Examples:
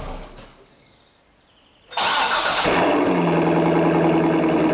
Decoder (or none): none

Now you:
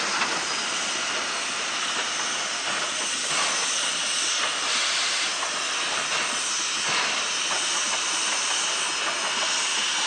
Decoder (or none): none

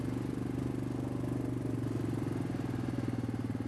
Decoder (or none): none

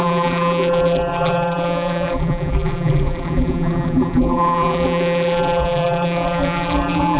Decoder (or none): vocoder, BigVGAN v2